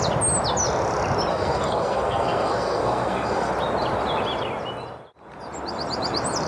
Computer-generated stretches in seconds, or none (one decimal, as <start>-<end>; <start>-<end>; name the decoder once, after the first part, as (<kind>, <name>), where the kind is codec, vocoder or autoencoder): 1.3-3.5 (codec, SNAC)